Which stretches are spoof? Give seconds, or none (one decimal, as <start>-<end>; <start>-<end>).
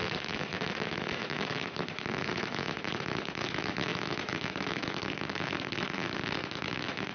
0.0-7.1